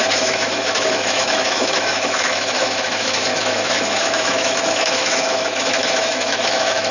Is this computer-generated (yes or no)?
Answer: yes